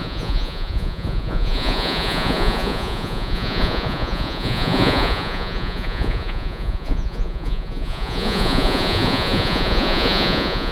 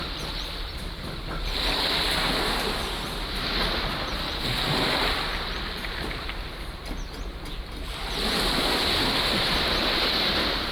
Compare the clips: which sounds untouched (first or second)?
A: second